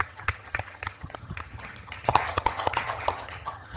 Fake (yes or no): yes